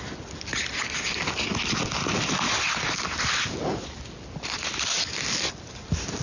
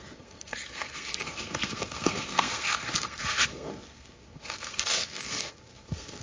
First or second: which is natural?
first